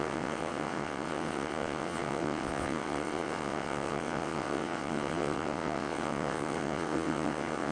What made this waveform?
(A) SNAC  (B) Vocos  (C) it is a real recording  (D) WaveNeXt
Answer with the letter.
D